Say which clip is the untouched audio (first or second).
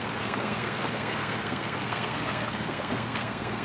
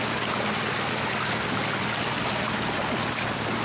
second